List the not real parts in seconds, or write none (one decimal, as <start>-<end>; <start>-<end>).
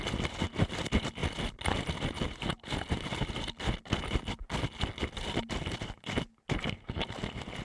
none